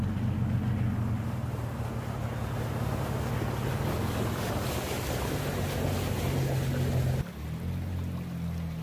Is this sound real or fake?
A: real